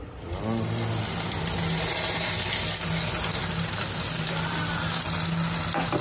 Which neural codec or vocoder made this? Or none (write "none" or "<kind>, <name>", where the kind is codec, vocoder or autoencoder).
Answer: none